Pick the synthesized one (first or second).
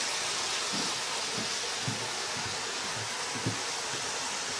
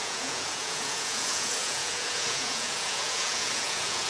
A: second